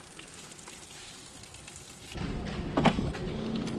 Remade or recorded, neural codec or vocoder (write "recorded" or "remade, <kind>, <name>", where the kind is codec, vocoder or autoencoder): recorded